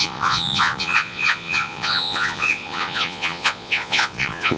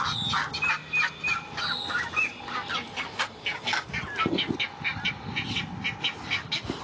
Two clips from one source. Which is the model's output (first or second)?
first